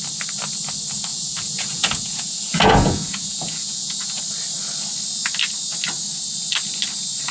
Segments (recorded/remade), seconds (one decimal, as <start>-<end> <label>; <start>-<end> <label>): 0.0-1.1 recorded; 1.1-4.2 remade; 4.2-7.3 recorded